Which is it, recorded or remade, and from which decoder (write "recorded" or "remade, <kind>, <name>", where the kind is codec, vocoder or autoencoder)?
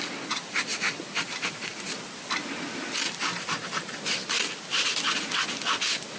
recorded